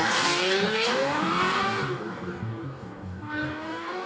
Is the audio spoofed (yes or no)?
yes